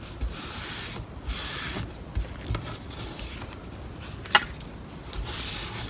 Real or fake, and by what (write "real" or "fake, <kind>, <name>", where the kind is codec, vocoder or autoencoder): real